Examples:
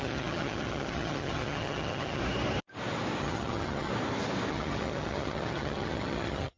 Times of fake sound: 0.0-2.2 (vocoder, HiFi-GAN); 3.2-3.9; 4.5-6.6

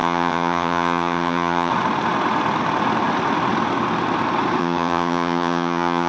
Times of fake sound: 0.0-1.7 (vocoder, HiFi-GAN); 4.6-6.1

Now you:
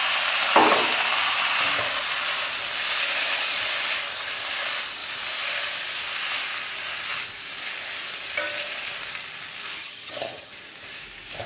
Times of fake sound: 9.8-10.5 (vocoder, HiFi-GAN)